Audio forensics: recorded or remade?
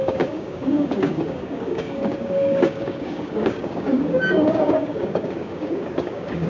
remade